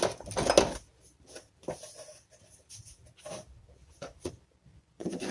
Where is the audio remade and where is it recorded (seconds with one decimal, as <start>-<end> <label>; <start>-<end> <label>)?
0.0-3.8 recorded; 3.8-4.3 remade; 4.3-4.7 recorded; 4.7-5.3 remade